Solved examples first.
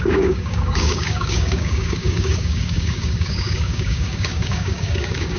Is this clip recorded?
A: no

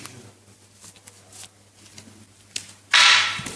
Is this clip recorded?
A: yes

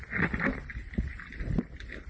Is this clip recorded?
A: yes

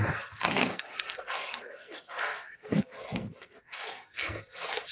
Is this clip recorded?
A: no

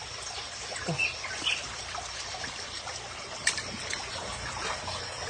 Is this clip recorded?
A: no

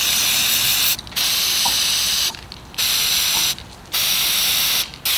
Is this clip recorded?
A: yes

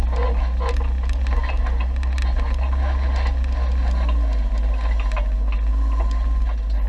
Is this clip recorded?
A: yes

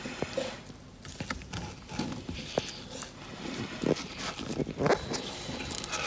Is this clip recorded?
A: yes